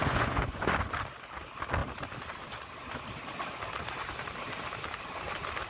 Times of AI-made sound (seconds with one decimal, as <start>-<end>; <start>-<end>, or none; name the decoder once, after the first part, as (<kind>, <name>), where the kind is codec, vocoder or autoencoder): 0.0-0.6 (vocoder, Vocos)